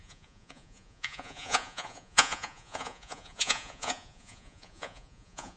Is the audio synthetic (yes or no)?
yes